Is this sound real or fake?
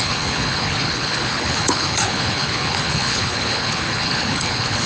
fake